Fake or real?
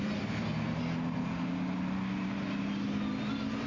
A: real